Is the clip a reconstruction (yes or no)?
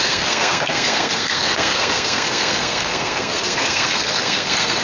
yes